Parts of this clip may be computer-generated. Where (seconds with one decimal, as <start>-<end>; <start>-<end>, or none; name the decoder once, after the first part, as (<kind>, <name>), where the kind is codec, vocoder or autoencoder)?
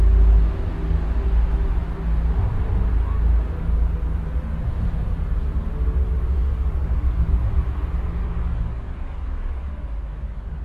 6.8-7.3 (codec, DAC); 8.2-10.6